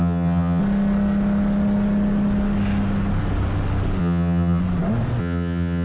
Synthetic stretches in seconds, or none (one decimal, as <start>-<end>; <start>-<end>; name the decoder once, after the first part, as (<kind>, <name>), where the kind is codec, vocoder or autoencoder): 0.0-0.6 (vocoder, HiFi-GAN); 4.0-4.6; 5.2-5.8